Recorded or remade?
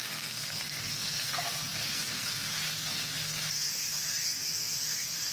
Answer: remade